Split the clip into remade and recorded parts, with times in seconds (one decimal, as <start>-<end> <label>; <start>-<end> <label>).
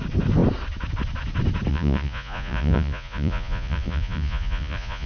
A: 0.0-1.7 recorded; 1.7-5.1 remade